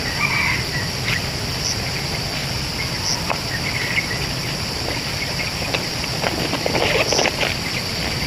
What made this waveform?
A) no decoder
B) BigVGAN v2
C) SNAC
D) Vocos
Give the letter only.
A